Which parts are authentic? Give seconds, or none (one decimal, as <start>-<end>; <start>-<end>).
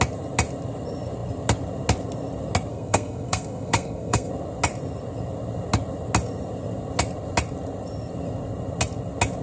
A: 0.0-2.7; 4.3-9.4